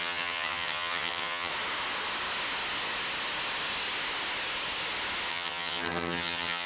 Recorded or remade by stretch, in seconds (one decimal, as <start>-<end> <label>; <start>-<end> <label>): 0.0-1.5 remade; 1.5-5.3 recorded; 5.3-6.7 remade